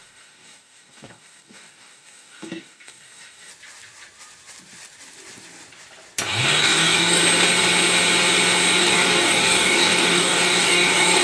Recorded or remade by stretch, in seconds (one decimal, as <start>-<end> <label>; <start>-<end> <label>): 0.0-3.5 remade; 3.5-6.4 recorded; 6.4-7.2 remade; 7.2-8.8 recorded; 8.8-11.2 remade